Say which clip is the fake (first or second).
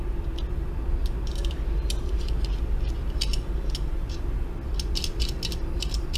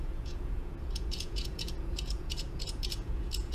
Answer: second